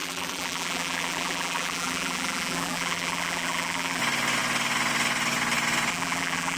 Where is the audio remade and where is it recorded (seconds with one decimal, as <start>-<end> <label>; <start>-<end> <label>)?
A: 0.0-4.0 remade; 4.0-5.9 recorded; 5.9-6.6 remade

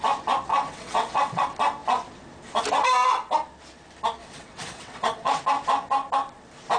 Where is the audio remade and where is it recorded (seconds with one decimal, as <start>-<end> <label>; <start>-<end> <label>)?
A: 0.0-0.5 recorded; 0.5-1.4 remade; 1.4-4.2 recorded; 4.2-5.4 remade; 5.4-6.8 recorded

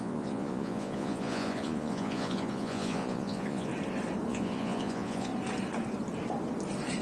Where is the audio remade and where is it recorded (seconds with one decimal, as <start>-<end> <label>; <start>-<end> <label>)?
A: 0.0-3.7 remade; 3.7-4.3 recorded; 4.3-5.3 remade; 5.3-7.0 recorded

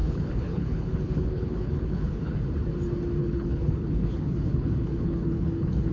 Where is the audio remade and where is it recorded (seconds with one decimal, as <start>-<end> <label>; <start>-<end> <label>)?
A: 0.0-2.4 remade; 2.4-3.2 recorded; 3.2-5.9 remade

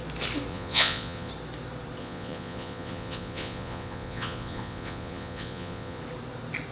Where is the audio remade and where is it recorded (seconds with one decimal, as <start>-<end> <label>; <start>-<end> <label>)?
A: 0.0-0.5 recorded; 0.5-1.3 remade; 1.3-2.0 recorded; 2.0-6.0 remade; 6.0-6.7 recorded

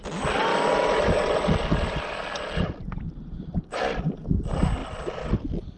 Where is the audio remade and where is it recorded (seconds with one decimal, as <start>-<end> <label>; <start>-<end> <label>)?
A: 0.0-4.8 recorded; 4.8-5.8 remade

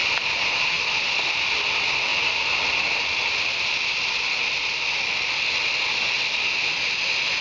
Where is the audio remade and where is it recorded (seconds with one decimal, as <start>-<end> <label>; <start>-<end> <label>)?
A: 0.0-1.2 remade; 1.2-7.4 recorded